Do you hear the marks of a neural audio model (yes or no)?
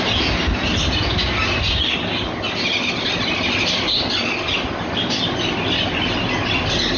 no